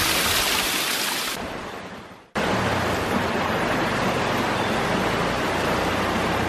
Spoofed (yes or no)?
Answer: no